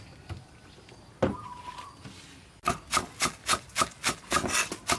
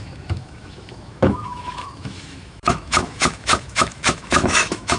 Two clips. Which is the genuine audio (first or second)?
first